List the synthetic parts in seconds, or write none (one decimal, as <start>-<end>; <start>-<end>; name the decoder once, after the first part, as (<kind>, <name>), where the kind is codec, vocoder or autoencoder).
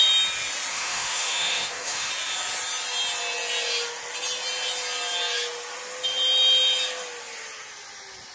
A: 0.7-2.1 (autoencoder, DAC-VAE)